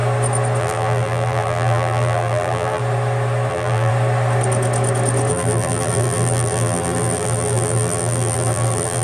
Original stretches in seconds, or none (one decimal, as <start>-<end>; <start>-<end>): 0.0-0.6; 2.8-3.5; 3.9-5.3